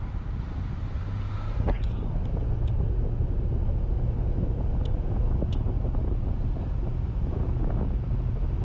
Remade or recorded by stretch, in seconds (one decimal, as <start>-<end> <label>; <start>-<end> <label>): 0.0-8.6 recorded